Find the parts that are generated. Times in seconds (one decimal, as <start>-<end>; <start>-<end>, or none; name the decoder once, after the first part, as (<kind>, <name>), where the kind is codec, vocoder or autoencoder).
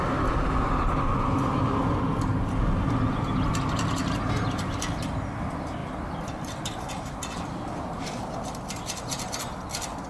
none